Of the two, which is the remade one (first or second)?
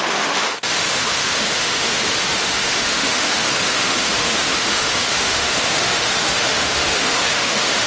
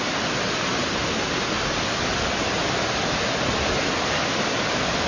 first